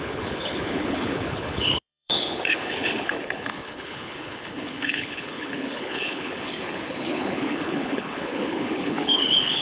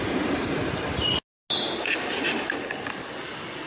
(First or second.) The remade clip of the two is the first